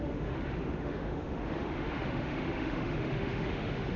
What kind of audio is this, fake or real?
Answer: fake